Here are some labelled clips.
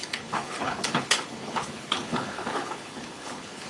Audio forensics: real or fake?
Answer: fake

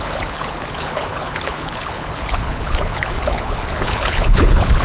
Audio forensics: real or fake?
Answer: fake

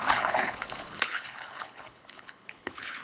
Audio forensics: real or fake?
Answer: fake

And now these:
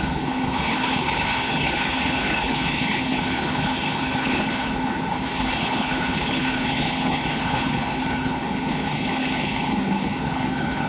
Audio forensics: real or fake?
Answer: fake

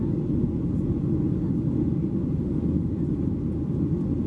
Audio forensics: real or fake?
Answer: real